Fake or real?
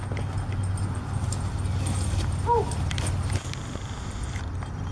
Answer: real